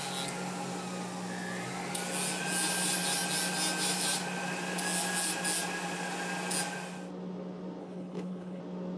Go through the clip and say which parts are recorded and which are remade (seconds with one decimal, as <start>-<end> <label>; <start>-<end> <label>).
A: 0.0-7.8 recorded; 7.8-8.6 remade; 8.6-9.0 recorded